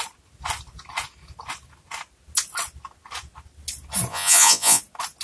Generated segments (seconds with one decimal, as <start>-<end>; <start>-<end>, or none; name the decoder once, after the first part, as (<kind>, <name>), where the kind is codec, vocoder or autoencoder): 4.1-4.8 (vocoder, Vocos)

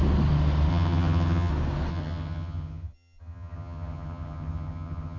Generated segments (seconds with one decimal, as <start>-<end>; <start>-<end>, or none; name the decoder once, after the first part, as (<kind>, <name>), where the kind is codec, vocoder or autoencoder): 0.7-1.5 (vocoder, HiFi-GAN); 1.9-5.2

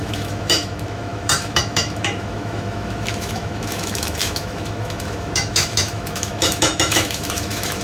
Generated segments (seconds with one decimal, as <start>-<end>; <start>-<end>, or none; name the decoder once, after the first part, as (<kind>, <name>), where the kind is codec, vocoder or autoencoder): 0.0-7.8 (autoencoder, DAC-VAE)

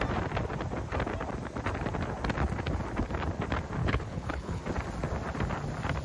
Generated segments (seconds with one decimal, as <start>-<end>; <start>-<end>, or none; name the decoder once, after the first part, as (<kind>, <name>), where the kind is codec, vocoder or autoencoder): 3.8-4.6 (codec, HILCodec)